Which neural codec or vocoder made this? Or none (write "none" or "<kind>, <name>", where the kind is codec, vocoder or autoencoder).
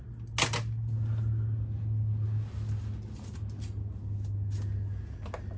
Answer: none